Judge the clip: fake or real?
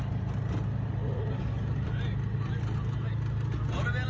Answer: real